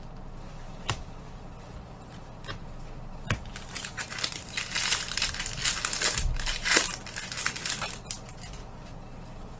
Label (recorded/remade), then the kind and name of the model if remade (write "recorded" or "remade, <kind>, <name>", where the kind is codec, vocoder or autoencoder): recorded